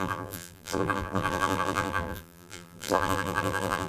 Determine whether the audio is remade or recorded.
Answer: remade